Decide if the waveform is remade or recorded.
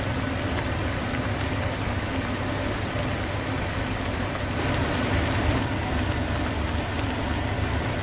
recorded